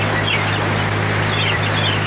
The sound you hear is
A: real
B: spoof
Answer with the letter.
A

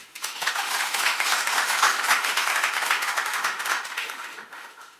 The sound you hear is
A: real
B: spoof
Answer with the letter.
B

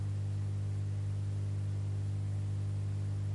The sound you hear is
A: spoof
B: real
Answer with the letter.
B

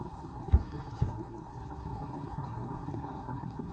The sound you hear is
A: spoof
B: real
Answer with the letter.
A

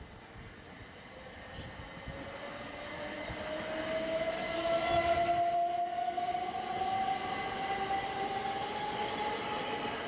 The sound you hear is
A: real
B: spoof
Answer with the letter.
A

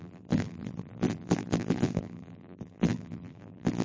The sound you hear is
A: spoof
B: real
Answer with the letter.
A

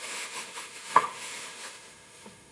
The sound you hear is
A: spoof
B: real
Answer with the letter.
A